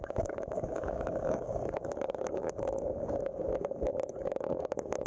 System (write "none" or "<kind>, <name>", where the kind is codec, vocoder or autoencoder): codec, DAC